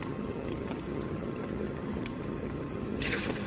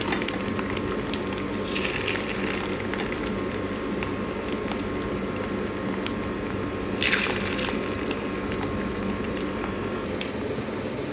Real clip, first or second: second